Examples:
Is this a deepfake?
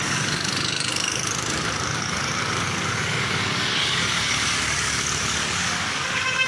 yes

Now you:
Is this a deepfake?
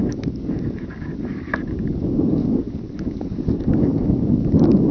yes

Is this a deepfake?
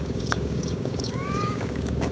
yes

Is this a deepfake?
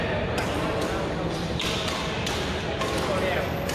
no